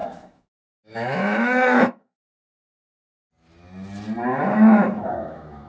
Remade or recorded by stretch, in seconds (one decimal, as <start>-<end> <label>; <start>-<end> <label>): 0.0-3.2 remade; 3.2-4.3 recorded; 4.3-5.7 remade